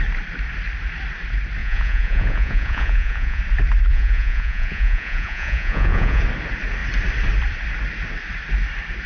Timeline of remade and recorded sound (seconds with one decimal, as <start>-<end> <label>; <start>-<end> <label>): 0.0-1.6 recorded; 1.6-3.4 remade; 3.4-3.9 recorded; 3.9-6.2 remade; 6.2-9.1 recorded